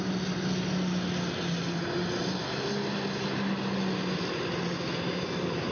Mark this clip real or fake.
real